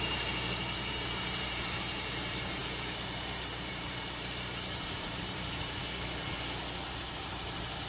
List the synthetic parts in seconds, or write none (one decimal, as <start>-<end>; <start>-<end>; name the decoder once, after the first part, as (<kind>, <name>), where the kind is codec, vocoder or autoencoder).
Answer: 0.0-5.8 (vocoder, BigVGAN v2); 7.2-7.9